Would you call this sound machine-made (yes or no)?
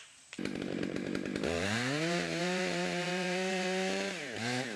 yes